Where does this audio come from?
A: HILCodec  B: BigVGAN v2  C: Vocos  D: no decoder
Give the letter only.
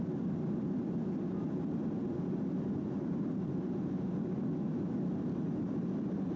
D